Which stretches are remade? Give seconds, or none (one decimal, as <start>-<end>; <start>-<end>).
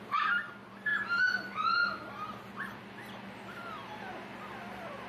none